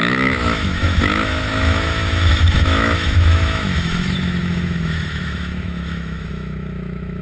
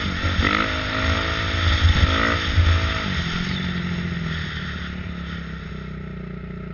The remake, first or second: first